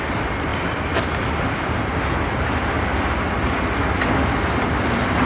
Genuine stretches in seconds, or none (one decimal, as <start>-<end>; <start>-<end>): 0.0-5.3